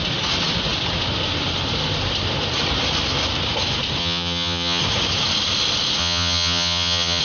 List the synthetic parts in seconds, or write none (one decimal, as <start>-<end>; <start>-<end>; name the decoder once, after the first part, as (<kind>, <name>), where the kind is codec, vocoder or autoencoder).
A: 4.0-4.8 (vocoder, HiFi-GAN); 6.0-7.2